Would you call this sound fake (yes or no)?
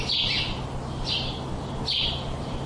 no